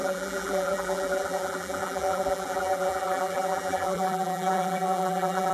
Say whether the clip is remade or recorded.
remade